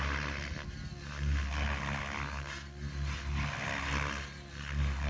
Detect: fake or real real